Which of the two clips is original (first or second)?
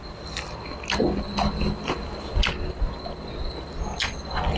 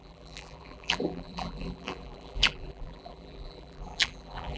first